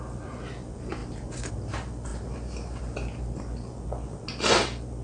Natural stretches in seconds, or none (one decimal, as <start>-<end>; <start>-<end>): 0.0-5.0